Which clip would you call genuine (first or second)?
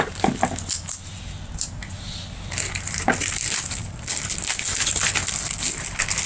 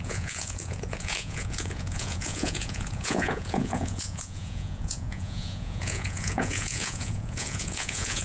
first